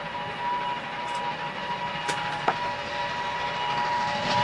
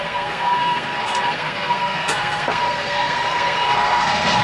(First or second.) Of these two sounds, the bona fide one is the first